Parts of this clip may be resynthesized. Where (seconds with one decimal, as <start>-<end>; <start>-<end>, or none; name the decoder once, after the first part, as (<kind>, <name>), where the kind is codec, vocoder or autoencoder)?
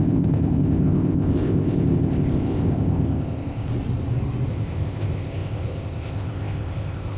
0.0-3.7 (codec, ZipCodec); 4.5-7.2